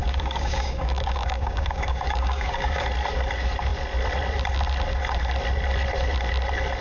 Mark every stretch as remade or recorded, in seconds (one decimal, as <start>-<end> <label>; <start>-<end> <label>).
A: 0.0-2.8 remade; 2.8-6.8 recorded